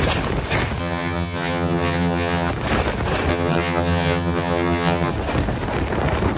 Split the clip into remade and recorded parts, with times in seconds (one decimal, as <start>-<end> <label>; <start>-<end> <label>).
0.0-0.8 recorded; 0.8-2.5 remade; 2.5-3.3 recorded; 3.3-5.1 remade; 5.1-6.4 recorded

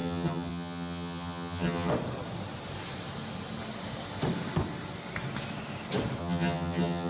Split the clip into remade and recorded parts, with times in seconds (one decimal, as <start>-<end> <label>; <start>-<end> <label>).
0.0-1.9 remade; 1.9-6.2 recorded; 6.2-7.1 remade

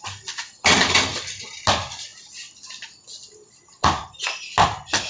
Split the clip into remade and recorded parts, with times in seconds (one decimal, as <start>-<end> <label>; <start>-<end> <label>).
0.0-5.1 recorded